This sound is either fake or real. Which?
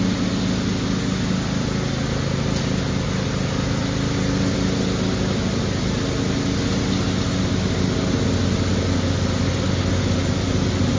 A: real